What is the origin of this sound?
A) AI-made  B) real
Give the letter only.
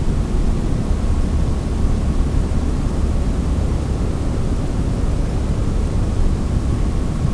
B